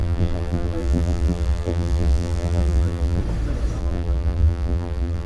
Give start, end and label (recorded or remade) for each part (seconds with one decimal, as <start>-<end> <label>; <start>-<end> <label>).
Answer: 0.0-3.2 remade; 3.2-3.8 recorded; 3.8-5.3 remade

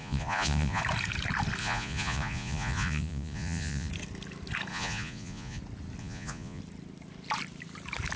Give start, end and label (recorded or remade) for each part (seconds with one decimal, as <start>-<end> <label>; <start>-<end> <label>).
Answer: 0.0-0.8 remade; 0.8-1.6 recorded; 1.6-3.9 remade; 3.9-4.7 recorded; 4.7-5.6 remade; 5.6-6.0 recorded; 6.0-6.6 remade; 6.6-8.2 recorded

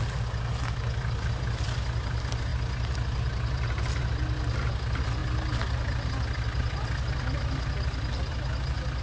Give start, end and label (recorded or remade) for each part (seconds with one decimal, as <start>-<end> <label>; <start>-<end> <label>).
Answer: 0.0-9.0 recorded